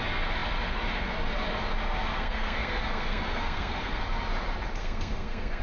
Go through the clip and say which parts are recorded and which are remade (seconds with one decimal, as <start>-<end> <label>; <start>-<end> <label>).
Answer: 0.0-2.1 recorded; 2.1-4.0 remade; 4.0-4.8 recorded; 4.8-5.6 remade